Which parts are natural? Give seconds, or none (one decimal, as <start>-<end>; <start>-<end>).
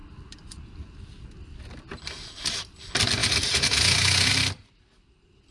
0.0-3.2; 4.3-5.5